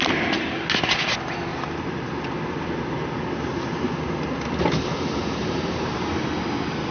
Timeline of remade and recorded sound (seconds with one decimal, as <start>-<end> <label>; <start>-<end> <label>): 0.0-5.4 recorded; 5.4-6.1 remade; 6.1-6.9 recorded